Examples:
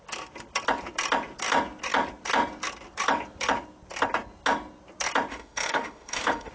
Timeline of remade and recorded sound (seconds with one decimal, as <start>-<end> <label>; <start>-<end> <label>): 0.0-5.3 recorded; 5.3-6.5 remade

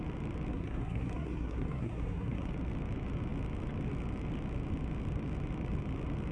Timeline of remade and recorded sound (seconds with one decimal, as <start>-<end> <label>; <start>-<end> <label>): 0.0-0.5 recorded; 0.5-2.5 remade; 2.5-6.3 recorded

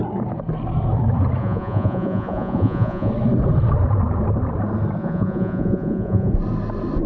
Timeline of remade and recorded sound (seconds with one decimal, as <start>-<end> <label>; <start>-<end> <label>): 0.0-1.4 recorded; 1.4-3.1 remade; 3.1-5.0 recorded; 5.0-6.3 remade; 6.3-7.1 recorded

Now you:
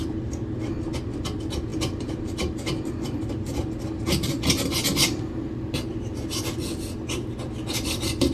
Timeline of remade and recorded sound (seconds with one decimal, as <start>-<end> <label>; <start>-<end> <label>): 0.0-8.3 recorded

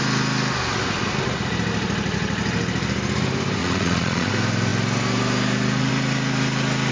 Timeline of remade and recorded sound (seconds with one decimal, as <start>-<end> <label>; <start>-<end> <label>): 0.0-3.6 recorded; 3.6-4.3 remade; 4.3-6.9 recorded